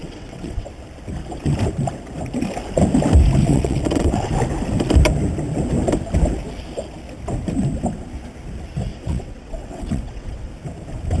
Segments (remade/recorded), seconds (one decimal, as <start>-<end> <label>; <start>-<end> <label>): 0.0-0.7 remade; 0.7-3.4 recorded; 3.4-4.3 remade; 4.3-8.9 recorded; 8.9-10.5 remade; 10.5-11.2 recorded